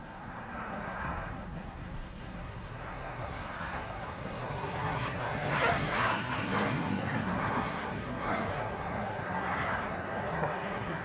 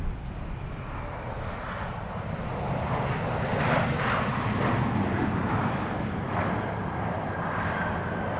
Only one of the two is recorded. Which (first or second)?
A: second